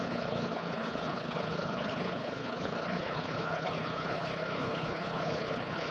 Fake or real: fake